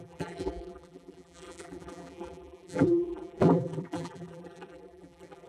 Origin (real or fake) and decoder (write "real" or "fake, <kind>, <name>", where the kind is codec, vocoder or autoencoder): fake, vocoder, BigVGAN v2